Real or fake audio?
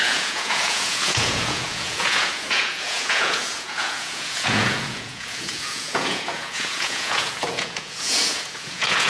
fake